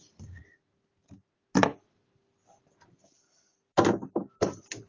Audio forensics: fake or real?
real